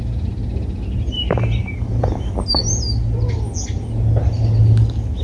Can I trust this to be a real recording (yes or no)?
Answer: yes